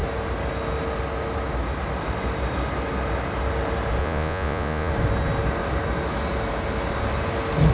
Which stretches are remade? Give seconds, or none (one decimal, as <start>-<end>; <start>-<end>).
4.0-4.9